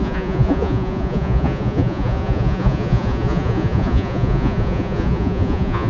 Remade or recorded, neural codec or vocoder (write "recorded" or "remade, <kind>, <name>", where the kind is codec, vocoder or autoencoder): remade, vocoder, Vocos